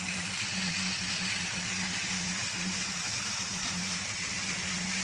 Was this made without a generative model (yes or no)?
yes